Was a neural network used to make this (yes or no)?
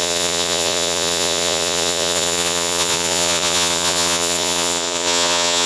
yes